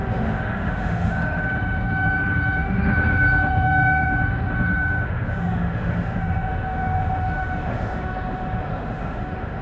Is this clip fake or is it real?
fake